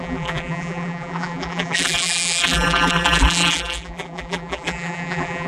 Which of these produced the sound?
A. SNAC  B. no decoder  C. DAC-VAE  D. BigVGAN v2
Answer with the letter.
D